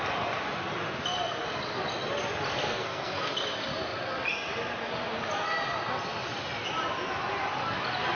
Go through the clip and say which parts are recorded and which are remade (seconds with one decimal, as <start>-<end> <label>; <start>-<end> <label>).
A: 0.0-2.6 recorded; 2.6-3.3 remade; 3.3-8.1 recorded